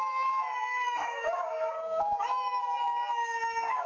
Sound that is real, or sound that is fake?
fake